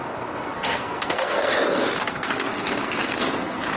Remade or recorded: remade